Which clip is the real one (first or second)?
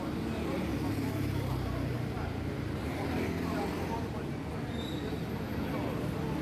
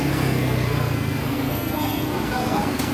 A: first